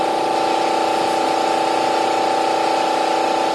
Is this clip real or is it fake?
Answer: real